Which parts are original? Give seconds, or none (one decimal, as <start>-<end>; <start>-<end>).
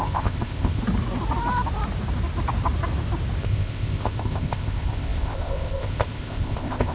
0.8-3.4